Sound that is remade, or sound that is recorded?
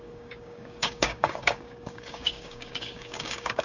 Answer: remade